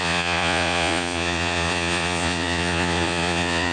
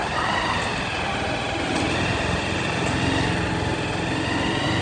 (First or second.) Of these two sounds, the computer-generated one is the first